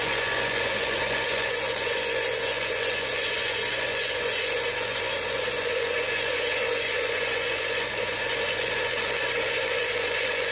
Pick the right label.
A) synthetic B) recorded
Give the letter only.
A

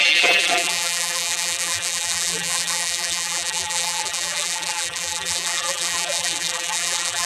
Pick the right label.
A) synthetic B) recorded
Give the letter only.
A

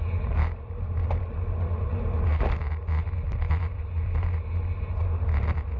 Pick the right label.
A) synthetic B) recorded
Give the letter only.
B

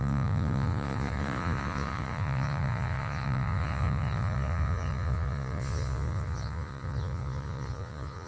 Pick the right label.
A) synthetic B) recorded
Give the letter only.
A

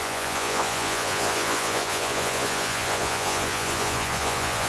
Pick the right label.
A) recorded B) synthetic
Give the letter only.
B